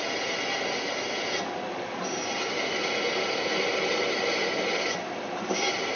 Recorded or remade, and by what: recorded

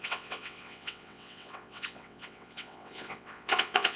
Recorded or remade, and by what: remade, vocoder, WaveNeXt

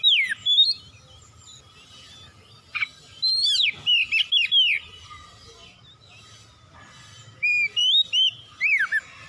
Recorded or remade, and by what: recorded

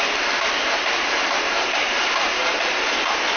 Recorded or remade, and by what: recorded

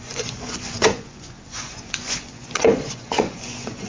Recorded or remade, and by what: remade, vocoder, Vocos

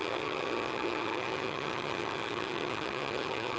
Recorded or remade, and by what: remade, vocoder, HiFi-GAN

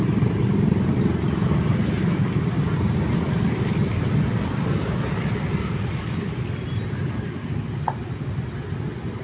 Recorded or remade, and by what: recorded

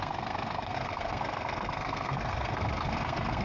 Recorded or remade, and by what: remade, codec, SNAC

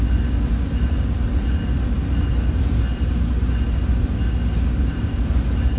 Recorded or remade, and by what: recorded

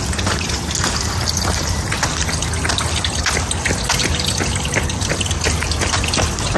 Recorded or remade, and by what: recorded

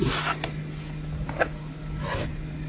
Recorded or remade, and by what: recorded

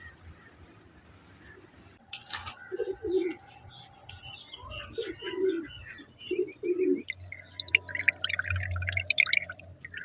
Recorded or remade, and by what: recorded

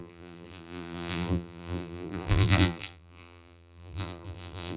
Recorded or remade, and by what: remade, vocoder, BigVGAN v2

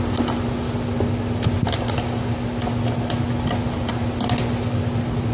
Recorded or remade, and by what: recorded